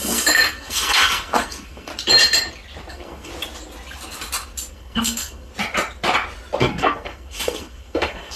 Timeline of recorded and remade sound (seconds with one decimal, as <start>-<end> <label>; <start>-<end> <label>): 0.0-1.9 remade; 1.9-2.9 recorded; 2.9-3.3 remade; 3.3-4.7 recorded; 4.7-5.5 remade; 5.5-6.6 recorded; 6.6-8.4 remade